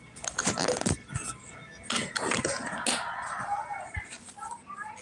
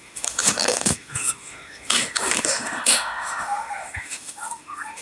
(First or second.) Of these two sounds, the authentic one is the first